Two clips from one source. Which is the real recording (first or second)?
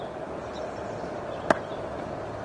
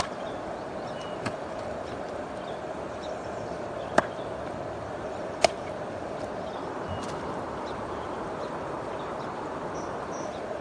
first